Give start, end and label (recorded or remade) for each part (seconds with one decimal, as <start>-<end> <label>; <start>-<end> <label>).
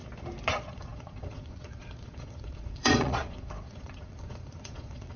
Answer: 0.0-0.5 recorded; 0.5-5.2 remade